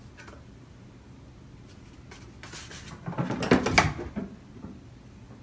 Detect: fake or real real